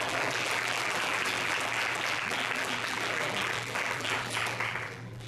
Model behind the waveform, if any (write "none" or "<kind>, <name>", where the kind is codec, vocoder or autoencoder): vocoder, BigVGAN v2